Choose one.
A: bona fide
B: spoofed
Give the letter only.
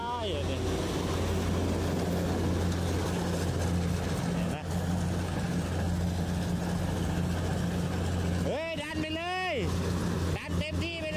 A